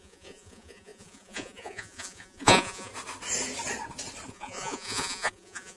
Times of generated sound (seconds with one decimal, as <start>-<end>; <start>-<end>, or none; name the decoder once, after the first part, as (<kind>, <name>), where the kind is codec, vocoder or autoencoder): 0.0-2.9 (vocoder, Vocos); 4.3-5.8